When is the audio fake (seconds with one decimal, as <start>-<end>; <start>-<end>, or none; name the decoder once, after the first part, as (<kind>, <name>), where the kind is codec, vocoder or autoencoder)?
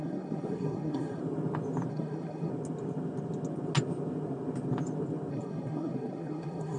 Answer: 0.0-1.2 (codec, SNAC); 1.9-2.5; 5.3-6.8